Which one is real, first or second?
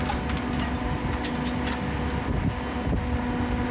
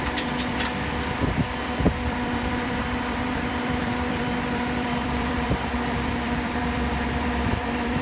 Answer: first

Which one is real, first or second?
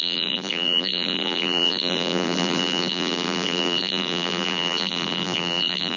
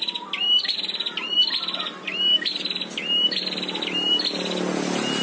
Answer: second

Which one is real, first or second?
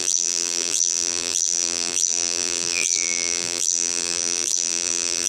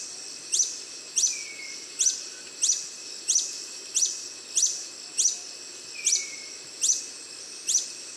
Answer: second